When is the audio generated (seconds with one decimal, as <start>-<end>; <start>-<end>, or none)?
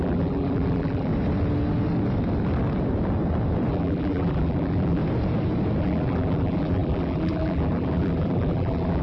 0.0-1.1; 3.7-5.0; 5.8-9.0